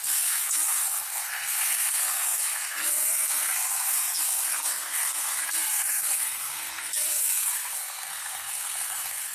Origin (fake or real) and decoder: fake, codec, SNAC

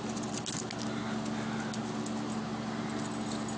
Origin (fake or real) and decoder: real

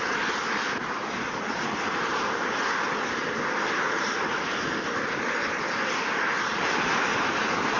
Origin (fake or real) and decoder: real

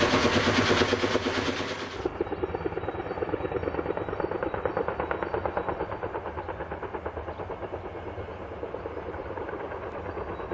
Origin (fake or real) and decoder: real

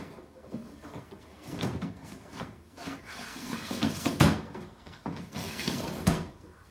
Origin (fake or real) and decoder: fake, codec, SNAC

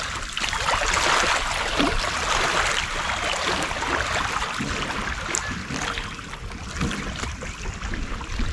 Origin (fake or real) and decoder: real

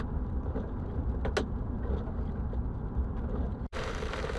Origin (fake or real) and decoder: real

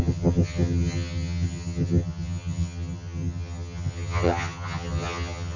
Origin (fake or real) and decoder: fake, vocoder, HiFi-GAN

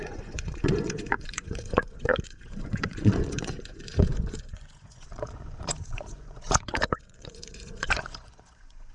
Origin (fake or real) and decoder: fake, vocoder, Vocos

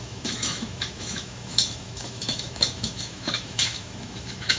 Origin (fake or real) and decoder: fake, autoencoder, DAC-VAE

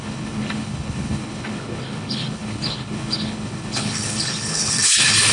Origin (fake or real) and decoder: fake, codec, HILCodec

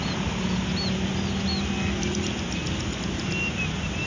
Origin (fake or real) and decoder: real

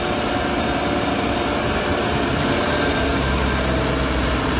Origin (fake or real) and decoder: real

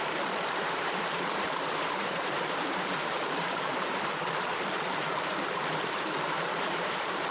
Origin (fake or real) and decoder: fake, vocoder, BigVGAN v2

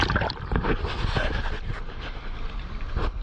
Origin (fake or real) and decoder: real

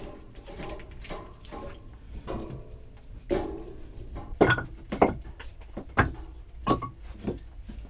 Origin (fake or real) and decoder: real